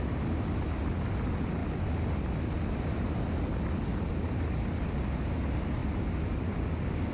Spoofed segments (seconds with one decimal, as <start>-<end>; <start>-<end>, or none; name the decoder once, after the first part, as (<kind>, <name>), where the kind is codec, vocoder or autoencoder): none

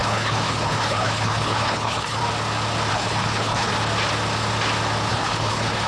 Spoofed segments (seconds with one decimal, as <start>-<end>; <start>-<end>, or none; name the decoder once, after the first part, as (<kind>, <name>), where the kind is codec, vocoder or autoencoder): 0.0-2.2 (codec, HILCodec); 2.9-3.7; 5.1-5.9